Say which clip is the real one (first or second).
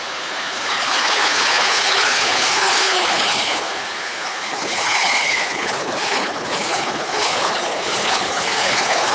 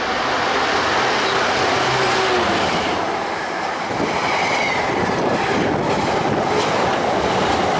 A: second